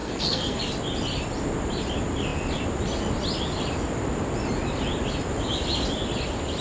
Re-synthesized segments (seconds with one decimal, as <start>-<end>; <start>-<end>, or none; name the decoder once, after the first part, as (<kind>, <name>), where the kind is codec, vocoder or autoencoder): 0.0-0.6 (codec, SNAC)